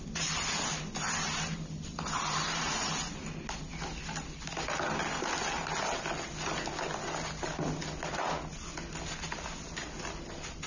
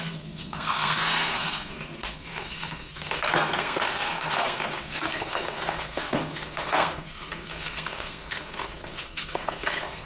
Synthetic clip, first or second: second